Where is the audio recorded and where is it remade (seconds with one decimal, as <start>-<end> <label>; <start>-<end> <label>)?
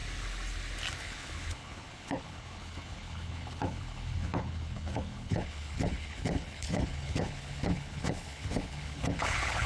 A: 0.0-1.0 recorded; 1.0-9.7 remade